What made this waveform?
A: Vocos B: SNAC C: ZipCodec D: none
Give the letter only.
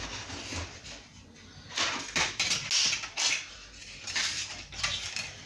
D